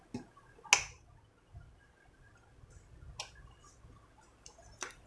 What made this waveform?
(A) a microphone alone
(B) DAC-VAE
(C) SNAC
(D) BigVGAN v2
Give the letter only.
A